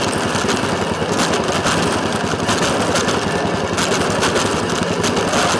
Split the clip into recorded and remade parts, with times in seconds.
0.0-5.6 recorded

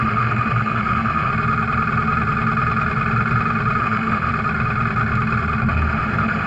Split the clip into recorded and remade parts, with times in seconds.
0.0-1.3 remade; 1.3-3.8 recorded; 3.8-4.3 remade; 4.3-5.7 recorded; 5.7-6.5 remade

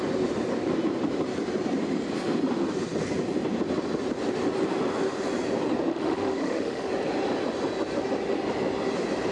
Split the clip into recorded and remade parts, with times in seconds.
0.0-5.9 recorded; 5.9-6.9 remade; 6.9-9.3 recorded

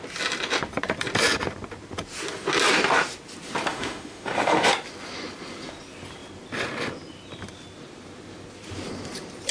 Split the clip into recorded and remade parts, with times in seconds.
0.0-3.7 recorded; 3.7-4.7 remade; 4.7-9.5 recorded